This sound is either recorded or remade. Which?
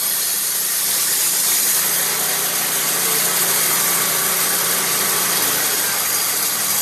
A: recorded